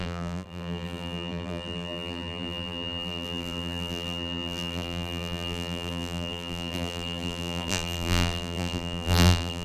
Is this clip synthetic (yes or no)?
yes